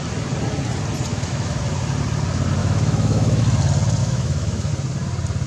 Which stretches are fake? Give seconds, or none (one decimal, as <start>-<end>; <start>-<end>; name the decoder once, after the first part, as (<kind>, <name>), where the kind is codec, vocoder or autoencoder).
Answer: 1.1-1.6 (autoencoder, DAC-VAE); 2.6-3.4; 4.0-4.7

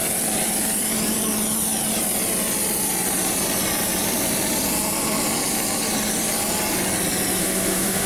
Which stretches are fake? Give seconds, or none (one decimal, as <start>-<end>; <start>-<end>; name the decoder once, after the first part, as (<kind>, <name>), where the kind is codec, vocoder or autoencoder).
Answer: 7.4-8.1 (autoencoder, DAC-VAE)

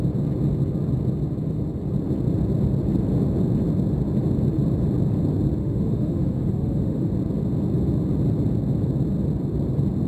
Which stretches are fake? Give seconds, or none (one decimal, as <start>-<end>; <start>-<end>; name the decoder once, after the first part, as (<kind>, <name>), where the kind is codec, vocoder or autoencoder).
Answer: 5.6-7.1 (autoencoder, DAC-VAE)

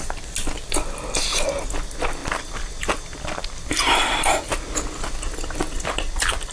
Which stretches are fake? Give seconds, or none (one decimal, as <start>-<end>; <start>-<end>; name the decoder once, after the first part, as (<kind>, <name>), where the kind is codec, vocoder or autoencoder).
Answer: none

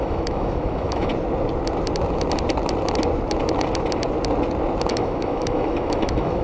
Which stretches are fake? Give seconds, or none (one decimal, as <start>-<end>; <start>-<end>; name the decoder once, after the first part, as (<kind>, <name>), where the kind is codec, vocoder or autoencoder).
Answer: 0.0-1.1 (autoencoder, DAC-VAE); 4.9-6.4

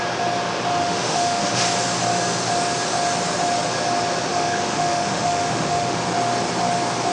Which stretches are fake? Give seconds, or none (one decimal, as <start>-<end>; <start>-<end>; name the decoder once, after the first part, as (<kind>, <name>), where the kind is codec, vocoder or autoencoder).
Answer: 0.7-1.6 (autoencoder, DAC-VAE); 4.3-6.0

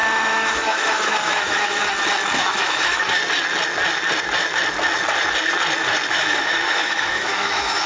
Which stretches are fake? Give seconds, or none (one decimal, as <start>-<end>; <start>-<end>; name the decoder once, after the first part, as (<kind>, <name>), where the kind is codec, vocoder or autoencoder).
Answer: 0.0-1.8 (autoencoder, DAC-VAE); 2.4-3.2; 6.1-7.9

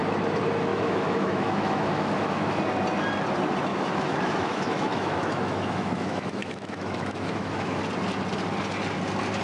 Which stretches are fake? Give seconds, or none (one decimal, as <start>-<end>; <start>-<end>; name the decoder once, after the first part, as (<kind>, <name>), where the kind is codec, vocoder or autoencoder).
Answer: 0.7-2.6 (autoencoder, DAC-VAE); 3.7-7.8